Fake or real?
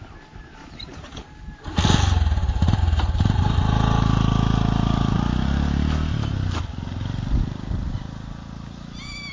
real